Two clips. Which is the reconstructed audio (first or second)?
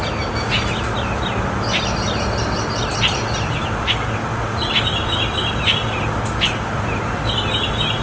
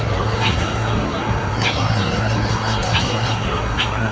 second